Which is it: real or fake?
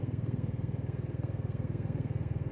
fake